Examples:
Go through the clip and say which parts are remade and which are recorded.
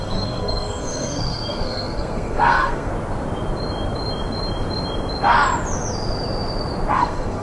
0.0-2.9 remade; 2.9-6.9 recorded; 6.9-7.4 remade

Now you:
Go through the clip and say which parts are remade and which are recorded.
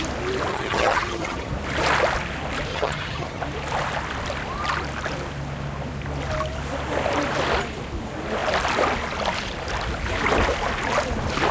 0.0-0.5 recorded; 0.5-1.5 remade; 1.5-2.7 recorded; 2.7-3.4 remade; 3.4-11.5 recorded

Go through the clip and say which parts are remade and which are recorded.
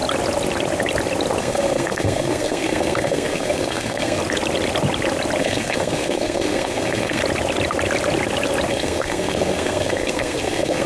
0.0-1.4 recorded; 1.4-4.2 remade; 4.2-5.4 recorded; 5.4-7.2 remade; 7.2-8.7 recorded; 8.7-10.9 remade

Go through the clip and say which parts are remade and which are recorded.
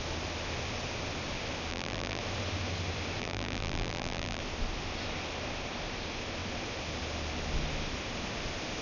0.0-1.7 recorded; 1.7-2.2 remade; 2.2-3.2 recorded; 3.2-4.4 remade; 4.4-8.8 recorded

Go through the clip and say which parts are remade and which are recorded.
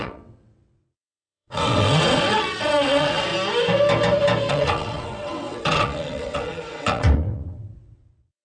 0.0-3.3 remade; 3.3-4.5 recorded; 4.5-8.4 remade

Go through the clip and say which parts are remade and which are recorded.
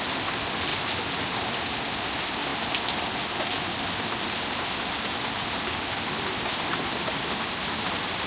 0.0-8.3 recorded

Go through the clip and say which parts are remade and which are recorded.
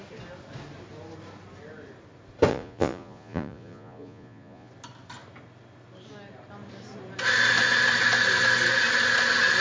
0.0-2.5 recorded; 2.5-4.7 remade; 4.7-9.6 recorded